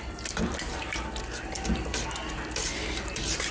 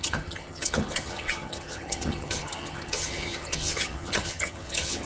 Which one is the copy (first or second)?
second